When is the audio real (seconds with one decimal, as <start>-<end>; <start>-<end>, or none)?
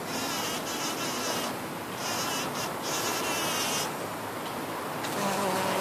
0.0-5.8